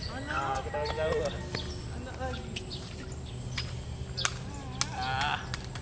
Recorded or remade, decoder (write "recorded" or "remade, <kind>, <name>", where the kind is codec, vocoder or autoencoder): recorded